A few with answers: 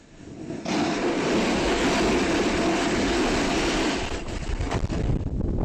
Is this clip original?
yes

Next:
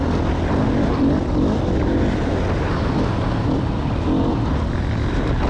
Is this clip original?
yes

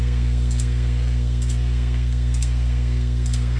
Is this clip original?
no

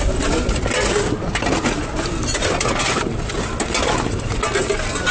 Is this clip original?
yes